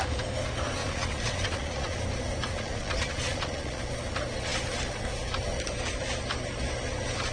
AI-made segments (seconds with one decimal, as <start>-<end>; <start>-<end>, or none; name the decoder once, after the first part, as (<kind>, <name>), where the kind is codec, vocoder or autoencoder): 0.8-2.0 (vocoder, Vocos); 2.5-3.8

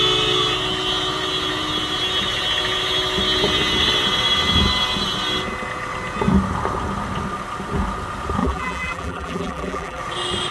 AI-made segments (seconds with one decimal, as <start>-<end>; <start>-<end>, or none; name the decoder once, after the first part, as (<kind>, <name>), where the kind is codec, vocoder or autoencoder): 8.4-10.0 (vocoder, BigVGAN v2)

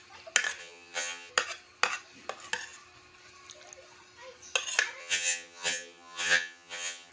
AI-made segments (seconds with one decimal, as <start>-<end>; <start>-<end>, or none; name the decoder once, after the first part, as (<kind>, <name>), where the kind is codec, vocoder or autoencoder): 0.6-1.3 (vocoder, HiFi-GAN); 5.0-7.1

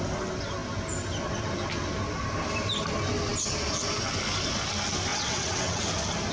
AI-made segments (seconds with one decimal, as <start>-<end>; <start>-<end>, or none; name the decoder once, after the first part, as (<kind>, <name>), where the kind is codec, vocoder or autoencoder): 5.1-5.8 (vocoder, WaveNeXt)

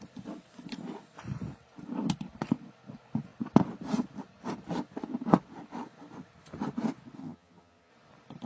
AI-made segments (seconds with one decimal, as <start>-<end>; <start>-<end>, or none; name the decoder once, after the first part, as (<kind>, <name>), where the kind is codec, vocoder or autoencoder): 7.2-7.9 (vocoder, HiFi-GAN)